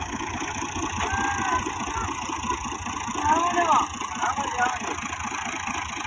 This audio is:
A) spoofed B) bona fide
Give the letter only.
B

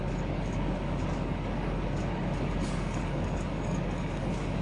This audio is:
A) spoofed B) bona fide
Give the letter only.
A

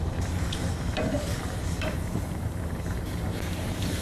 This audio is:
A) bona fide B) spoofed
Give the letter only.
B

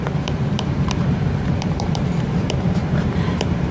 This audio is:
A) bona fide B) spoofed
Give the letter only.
B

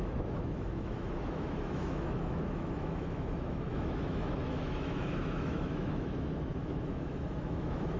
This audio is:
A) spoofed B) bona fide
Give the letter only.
A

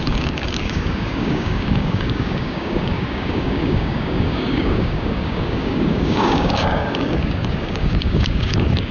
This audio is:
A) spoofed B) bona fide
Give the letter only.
A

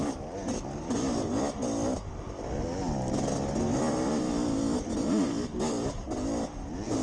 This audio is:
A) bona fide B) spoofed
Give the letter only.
A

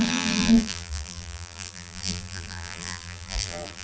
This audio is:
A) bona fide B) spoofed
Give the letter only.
B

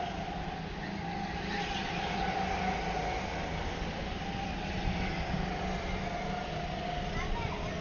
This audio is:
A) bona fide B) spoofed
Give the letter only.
A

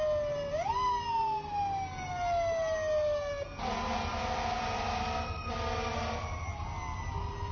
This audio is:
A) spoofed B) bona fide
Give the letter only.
B